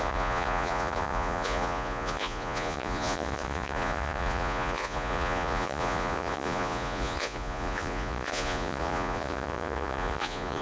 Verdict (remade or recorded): remade